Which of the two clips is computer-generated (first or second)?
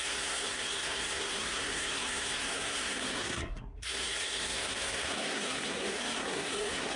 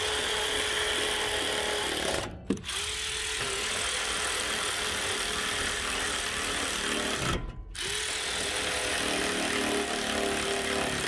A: first